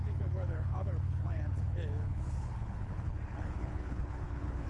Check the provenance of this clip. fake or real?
fake